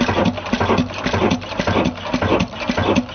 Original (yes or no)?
yes